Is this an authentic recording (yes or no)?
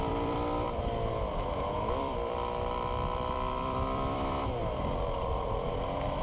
no